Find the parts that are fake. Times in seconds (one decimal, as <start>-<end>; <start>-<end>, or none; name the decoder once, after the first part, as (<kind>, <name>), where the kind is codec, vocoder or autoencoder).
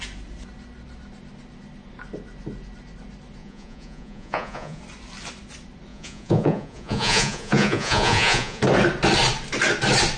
3.4-4.8 (vocoder, Vocos); 5.9-8.6